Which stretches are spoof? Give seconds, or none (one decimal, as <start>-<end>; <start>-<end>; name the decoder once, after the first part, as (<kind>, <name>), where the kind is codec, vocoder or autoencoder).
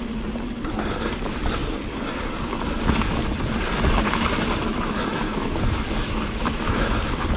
4.7-6.9 (autoencoder, DAC-VAE)